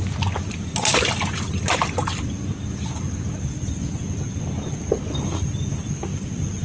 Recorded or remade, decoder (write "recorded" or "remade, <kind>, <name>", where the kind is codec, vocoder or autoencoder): recorded